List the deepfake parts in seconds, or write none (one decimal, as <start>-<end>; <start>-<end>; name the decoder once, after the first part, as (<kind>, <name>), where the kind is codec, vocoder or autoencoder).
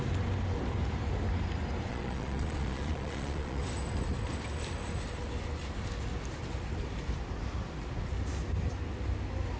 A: 1.9-3.6 (vocoder, Vocos)